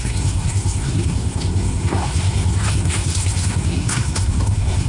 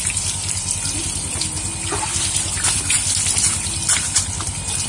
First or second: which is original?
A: second